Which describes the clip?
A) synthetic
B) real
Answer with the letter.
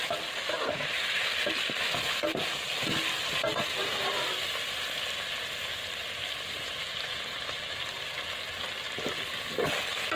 B